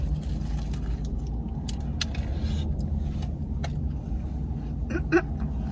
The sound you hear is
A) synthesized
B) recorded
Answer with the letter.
B